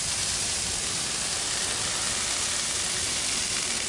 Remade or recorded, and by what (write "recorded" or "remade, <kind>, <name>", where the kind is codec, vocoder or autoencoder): recorded